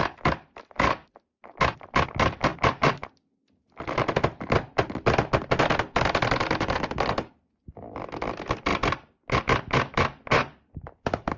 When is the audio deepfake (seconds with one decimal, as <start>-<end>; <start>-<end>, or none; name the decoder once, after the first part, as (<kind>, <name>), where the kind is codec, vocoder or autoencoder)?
none